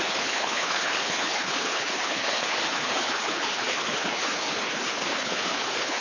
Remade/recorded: remade